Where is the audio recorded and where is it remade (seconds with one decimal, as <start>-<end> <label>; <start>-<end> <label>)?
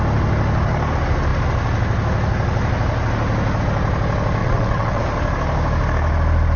0.0-4.4 recorded; 4.4-5.0 remade; 5.0-6.6 recorded